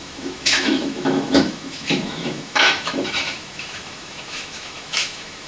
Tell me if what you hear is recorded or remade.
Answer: remade